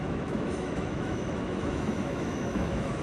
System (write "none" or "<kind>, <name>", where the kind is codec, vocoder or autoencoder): autoencoder, DAC-VAE